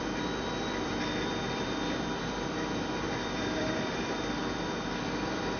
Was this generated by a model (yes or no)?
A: yes